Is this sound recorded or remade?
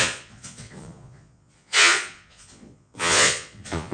remade